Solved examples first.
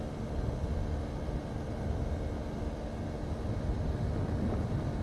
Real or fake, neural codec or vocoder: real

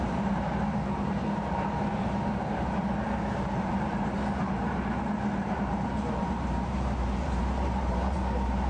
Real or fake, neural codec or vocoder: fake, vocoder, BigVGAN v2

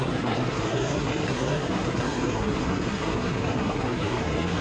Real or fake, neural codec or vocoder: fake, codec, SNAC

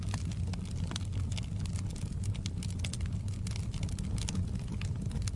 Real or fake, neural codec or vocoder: real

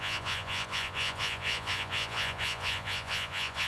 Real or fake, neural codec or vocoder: fake, vocoder, Vocos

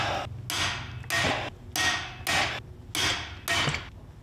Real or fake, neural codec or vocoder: real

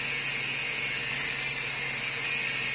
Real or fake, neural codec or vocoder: real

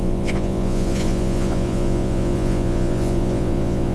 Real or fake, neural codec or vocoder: fake, vocoder, Vocos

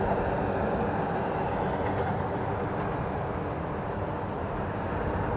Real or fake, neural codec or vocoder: real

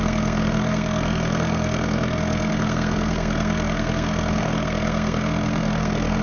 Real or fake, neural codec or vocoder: fake, codec, SNAC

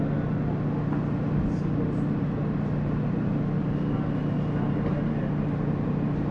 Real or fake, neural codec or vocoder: real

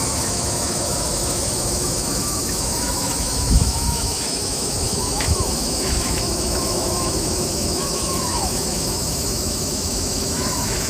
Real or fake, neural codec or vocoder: fake, autoencoder, DAC-VAE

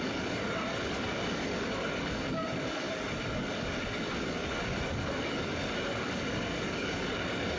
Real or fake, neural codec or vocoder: fake, codec, DAC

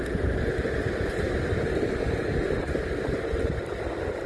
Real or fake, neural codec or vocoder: real